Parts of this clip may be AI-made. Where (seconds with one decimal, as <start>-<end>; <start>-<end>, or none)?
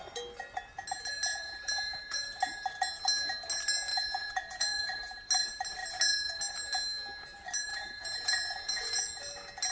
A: 1.3-2.3; 3.9-5.0; 7.7-9.0